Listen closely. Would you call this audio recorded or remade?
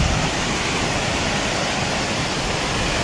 recorded